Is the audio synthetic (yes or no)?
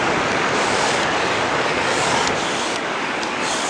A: yes